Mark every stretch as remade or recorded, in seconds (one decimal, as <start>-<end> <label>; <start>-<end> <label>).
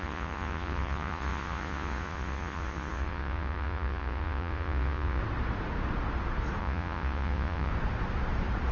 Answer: 0.0-5.2 remade; 5.2-6.6 recorded; 6.6-7.7 remade; 7.7-8.7 recorded